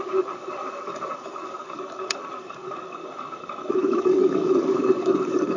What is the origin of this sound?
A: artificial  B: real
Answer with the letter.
A